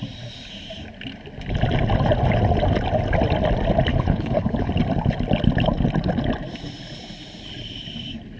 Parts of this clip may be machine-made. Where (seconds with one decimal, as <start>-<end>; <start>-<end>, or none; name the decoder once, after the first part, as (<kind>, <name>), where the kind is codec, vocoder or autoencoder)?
3.9-4.7 (codec, HILCodec)